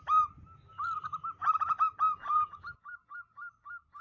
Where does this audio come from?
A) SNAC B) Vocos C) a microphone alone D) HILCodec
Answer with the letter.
C